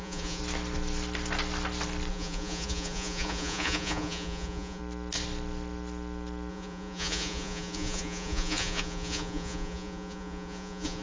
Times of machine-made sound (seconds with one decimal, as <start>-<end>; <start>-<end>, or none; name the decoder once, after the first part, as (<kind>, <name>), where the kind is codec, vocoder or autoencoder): 0.0-0.4 (vocoder, Vocos); 2.1-4.8; 6.5-11.0